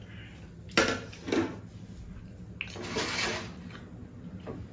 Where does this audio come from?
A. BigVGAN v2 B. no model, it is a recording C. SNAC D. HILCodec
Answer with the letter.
B